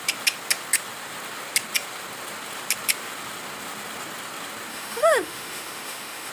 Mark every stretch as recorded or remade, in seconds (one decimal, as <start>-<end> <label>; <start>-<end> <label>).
0.0-4.7 recorded; 4.7-6.3 remade

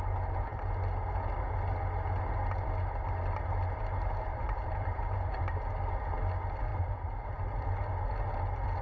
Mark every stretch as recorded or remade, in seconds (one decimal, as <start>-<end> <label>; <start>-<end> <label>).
0.0-4.3 recorded; 4.3-5.7 remade; 5.7-6.7 recorded; 6.7-7.4 remade; 7.4-8.8 recorded